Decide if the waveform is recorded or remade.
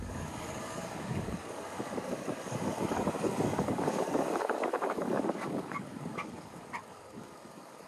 remade